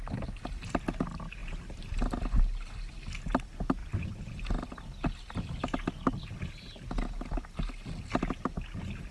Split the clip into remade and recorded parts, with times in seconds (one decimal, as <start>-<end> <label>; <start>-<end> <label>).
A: 0.0-9.1 recorded